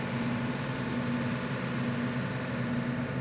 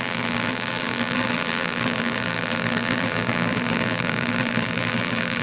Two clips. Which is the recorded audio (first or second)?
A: first